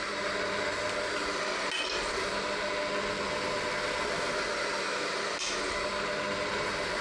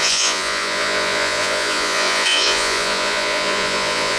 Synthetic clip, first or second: second